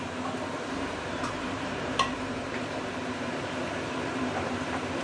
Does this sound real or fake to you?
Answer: fake